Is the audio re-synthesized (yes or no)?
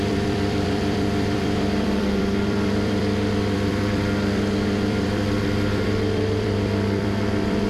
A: yes